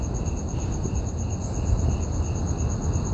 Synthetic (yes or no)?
no